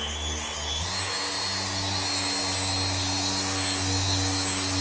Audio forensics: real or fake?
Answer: real